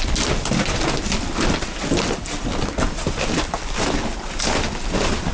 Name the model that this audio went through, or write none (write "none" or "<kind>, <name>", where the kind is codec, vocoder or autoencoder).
none